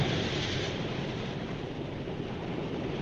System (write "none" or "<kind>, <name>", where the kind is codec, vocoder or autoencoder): vocoder, BigVGAN v2